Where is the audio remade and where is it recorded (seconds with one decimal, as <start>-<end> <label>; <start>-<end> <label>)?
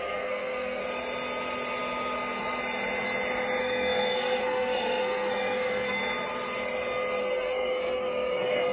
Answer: 0.0-0.8 remade; 0.8-3.6 recorded; 3.6-6.0 remade; 6.0-7.2 recorded; 7.2-8.7 remade